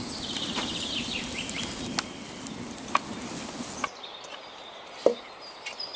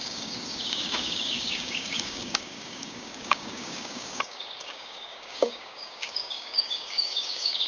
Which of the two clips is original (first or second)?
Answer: first